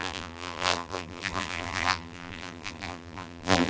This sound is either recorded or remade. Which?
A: remade